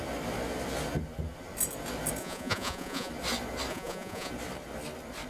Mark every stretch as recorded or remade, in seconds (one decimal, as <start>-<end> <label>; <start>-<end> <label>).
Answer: 0.0-2.2 recorded; 2.2-3.1 remade; 3.1-3.7 recorded; 3.7-4.3 remade; 4.3-5.3 recorded